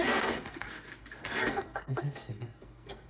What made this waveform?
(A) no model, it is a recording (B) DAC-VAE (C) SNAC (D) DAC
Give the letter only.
C